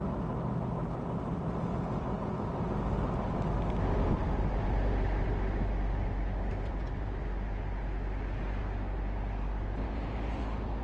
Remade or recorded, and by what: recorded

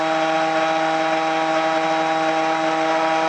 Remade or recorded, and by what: recorded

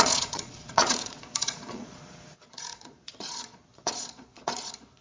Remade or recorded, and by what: remade, vocoder, Vocos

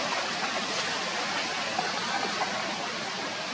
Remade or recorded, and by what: recorded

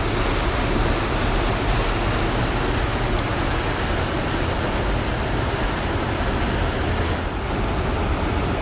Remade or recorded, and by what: recorded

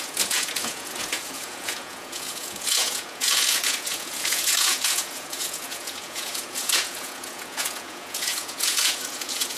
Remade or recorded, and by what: remade, vocoder, Vocos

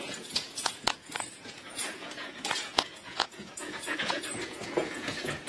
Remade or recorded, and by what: remade, vocoder, Vocos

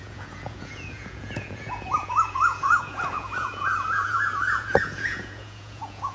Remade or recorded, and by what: remade, vocoder, Vocos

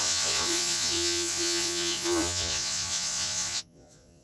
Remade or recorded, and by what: remade, vocoder, Vocos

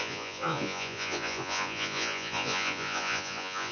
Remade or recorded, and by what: remade, vocoder, Vocos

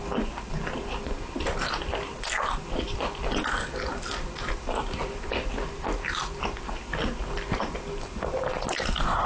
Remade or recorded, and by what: recorded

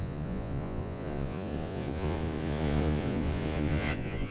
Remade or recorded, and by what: remade, vocoder, Vocos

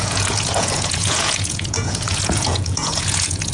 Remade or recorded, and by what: remade, vocoder, Vocos